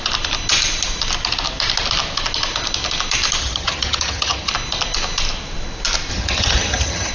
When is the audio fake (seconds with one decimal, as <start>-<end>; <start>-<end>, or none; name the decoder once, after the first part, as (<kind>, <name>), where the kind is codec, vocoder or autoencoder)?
3.4-4.5 (vocoder, HiFi-GAN); 6.1-7.1